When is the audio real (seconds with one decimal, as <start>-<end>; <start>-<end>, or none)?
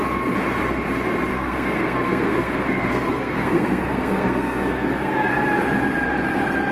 0.0-1.3; 5.3-6.7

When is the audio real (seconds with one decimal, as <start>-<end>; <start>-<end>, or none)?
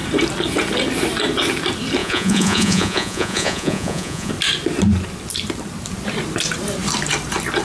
0.0-2.0; 4.3-7.6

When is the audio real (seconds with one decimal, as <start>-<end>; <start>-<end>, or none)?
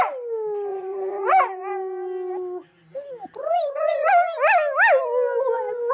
0.0-0.7; 1.6-3.4; 4.1-5.9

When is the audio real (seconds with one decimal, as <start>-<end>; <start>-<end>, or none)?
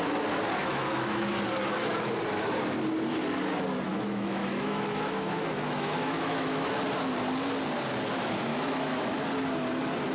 0.0-0.6; 1.4-3.9; 6.7-8.5; 9.1-10.1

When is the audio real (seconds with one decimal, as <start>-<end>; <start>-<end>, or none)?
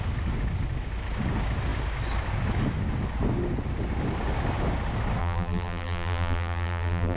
0.0-5.2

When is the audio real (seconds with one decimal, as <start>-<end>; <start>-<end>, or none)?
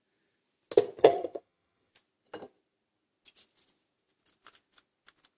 0.0-1.0; 1.9-5.4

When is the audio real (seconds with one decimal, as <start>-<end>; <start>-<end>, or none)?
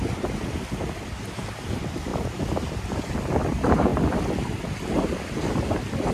0.0-2.1; 3.1-6.1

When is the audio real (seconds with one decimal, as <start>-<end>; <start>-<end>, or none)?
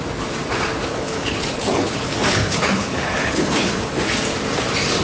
0.0-0.9; 3.9-5.0